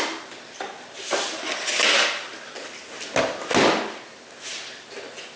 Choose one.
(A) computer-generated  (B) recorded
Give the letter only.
B